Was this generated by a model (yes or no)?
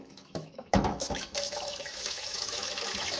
yes